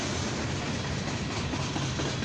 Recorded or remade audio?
recorded